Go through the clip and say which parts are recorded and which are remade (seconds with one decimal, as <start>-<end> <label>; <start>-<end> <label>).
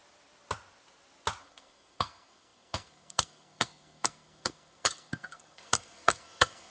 0.0-1.4 recorded; 1.4-6.7 remade